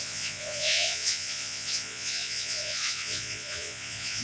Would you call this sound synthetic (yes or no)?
yes